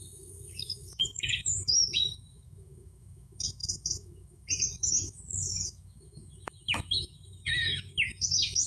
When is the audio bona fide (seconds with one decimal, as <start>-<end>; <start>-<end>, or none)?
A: none